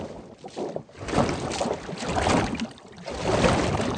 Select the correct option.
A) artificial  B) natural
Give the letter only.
B